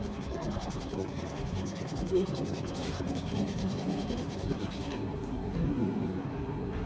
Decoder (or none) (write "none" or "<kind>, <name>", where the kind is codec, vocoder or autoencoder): codec, SNAC